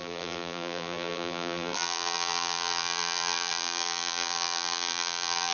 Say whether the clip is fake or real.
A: fake